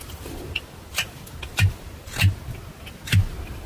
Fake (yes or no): no